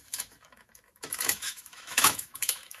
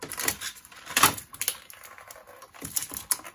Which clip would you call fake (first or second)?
first